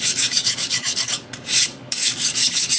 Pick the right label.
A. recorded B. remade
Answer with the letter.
B